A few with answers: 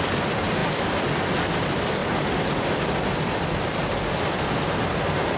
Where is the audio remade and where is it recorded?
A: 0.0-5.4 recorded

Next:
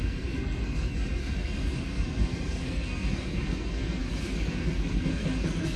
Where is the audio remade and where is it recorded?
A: 0.0-5.8 remade

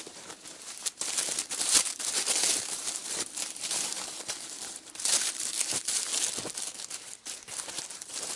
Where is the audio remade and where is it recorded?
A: 0.0-6.1 remade; 6.1-6.7 recorded; 6.7-8.4 remade

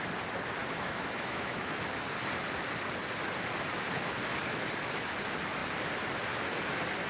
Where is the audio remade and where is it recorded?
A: 0.0-0.6 recorded; 0.6-1.8 remade; 1.8-7.1 recorded

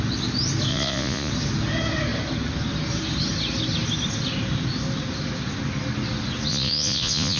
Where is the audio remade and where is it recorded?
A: 0.0-0.7 recorded; 0.7-1.3 remade; 1.3-6.5 recorded; 6.5-7.4 remade

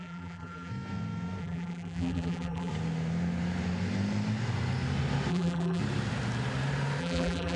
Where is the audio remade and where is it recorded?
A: 0.0-0.7 remade; 0.7-1.4 recorded; 1.4-2.7 remade; 2.7-5.3 recorded; 5.3-5.8 remade; 5.8-7.0 recorded; 7.0-7.6 remade

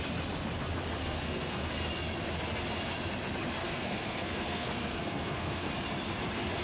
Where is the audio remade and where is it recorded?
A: 0.0-1.0 recorded; 1.0-1.7 remade; 1.7-3.6 recorded; 3.6-5.7 remade; 5.7-6.6 recorded

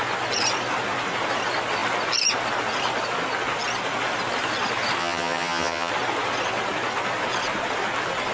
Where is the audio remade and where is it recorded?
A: 0.0-5.0 recorded; 5.0-5.9 remade; 5.9-8.3 recorded